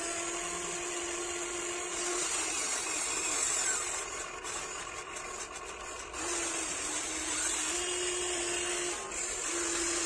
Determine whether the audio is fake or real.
real